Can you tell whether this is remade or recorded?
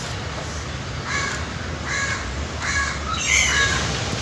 recorded